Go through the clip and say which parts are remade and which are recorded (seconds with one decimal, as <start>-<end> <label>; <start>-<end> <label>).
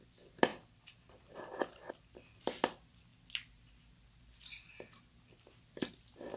0.0-6.4 recorded